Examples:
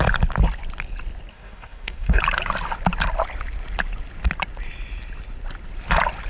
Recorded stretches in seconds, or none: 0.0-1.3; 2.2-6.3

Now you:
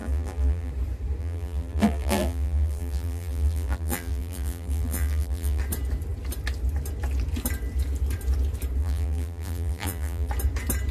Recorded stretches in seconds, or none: 0.7-1.2; 5.6-8.8; 10.3-10.9

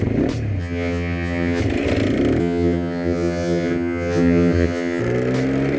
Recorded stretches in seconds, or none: 0.0-0.6; 1.6-2.4; 5.0-5.8

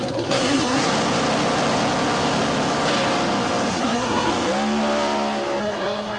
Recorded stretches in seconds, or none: 0.9-3.7; 4.3-5.6

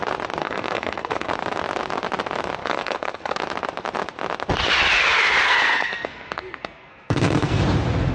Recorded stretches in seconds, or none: 0.0-0.4; 1.3-2.6; 3.4-5.4; 7.6-8.1

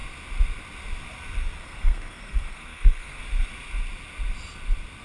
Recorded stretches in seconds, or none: 0.0-1.6; 3.2-5.0